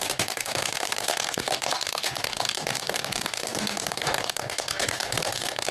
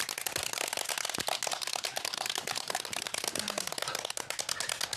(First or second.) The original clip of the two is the second